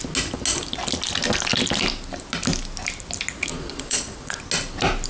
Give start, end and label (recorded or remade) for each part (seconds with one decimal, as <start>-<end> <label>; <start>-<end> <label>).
0.0-3.5 recorded; 3.5-4.4 remade; 4.4-5.1 recorded